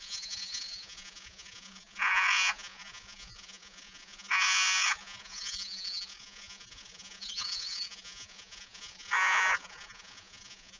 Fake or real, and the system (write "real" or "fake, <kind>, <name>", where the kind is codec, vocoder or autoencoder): fake, vocoder, Vocos